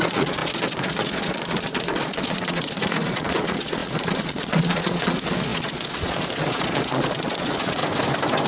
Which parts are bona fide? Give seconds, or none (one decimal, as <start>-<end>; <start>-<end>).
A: 7.8-8.5